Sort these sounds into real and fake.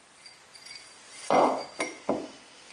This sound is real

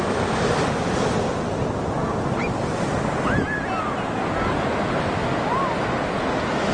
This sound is real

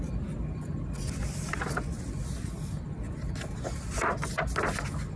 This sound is real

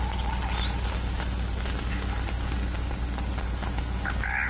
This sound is real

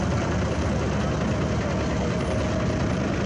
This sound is real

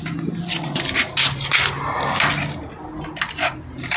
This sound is real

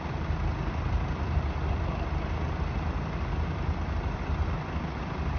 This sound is real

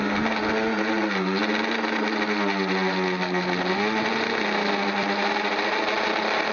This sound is real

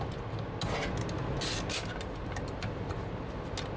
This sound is real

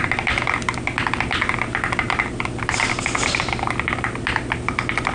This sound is real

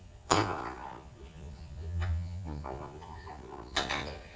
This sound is fake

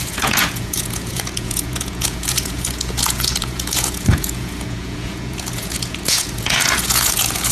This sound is fake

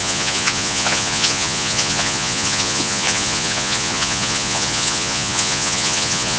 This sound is fake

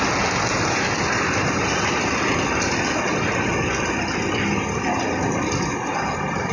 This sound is real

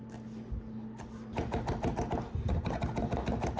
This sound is real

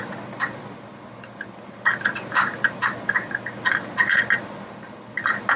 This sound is real